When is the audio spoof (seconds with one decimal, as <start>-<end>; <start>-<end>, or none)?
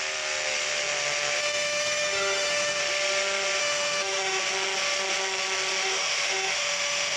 1.4-2.8; 3.6-4.4; 5.8-7.2